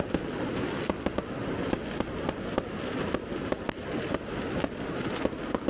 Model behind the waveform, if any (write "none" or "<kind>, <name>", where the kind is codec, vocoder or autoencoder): none